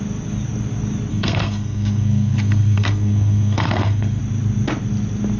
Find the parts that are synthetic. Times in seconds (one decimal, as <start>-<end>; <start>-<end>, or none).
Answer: 1.1-4.2